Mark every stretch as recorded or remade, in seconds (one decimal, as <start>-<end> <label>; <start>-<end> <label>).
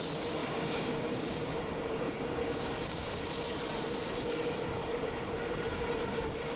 0.0-0.4 recorded; 0.4-1.6 remade; 1.6-2.4 recorded; 2.4-3.2 remade; 3.2-6.6 recorded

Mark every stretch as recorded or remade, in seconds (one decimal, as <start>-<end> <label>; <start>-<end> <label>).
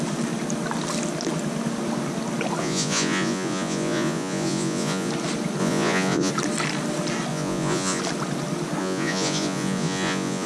0.0-2.6 recorded; 2.6-5.1 remade; 5.1-5.6 recorded; 5.6-6.3 remade; 6.3-7.3 recorded; 7.3-8.0 remade; 8.0-8.8 recorded; 8.8-10.5 remade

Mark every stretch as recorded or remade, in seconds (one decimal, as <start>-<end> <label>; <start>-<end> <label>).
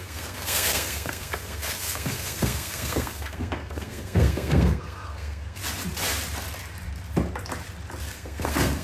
0.0-5.6 remade; 5.6-8.0 recorded; 8.0-8.8 remade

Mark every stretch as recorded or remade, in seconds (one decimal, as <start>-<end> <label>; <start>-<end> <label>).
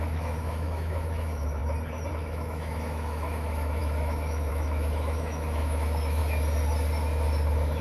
0.0-1.6 remade; 1.6-2.1 recorded; 2.1-6.2 remade; 6.2-7.8 recorded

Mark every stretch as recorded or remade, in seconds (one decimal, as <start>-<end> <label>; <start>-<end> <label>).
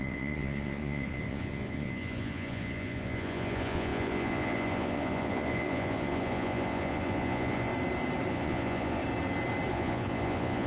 0.0-7.7 remade; 7.7-8.3 recorded; 8.3-9.0 remade; 9.0-9.7 recorded; 9.7-10.7 remade